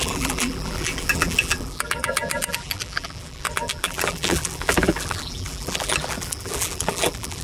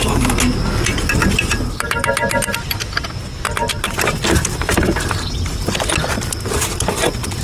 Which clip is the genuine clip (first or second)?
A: second